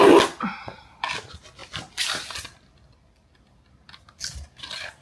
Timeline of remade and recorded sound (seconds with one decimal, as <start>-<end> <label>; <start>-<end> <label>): 0.0-5.0 recorded